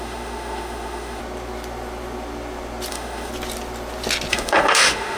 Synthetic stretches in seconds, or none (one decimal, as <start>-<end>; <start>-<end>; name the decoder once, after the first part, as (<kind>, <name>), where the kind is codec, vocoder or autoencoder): 0.0-1.2 (autoencoder, DAC-VAE); 2.9-3.3; 4.3-5.2